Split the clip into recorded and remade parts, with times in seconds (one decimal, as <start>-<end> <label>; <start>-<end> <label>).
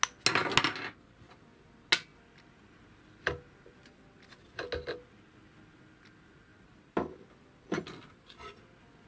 0.0-2.1 recorded; 2.1-4.3 remade; 4.3-6.5 recorded; 6.5-7.4 remade; 7.4-9.1 recorded